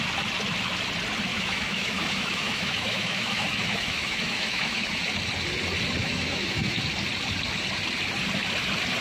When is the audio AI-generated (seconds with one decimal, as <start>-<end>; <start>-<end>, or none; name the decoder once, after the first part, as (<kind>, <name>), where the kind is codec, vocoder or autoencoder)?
1.3-5.0 (autoencoder, DAC-VAE); 6.0-6.8